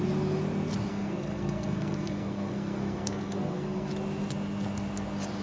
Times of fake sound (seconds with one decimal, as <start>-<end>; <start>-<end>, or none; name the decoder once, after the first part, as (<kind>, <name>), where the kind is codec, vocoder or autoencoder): 0.9-3.9 (codec, SNAC)